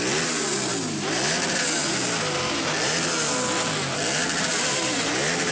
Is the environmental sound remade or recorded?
recorded